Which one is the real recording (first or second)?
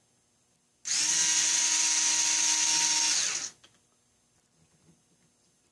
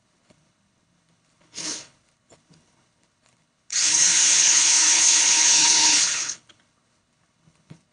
first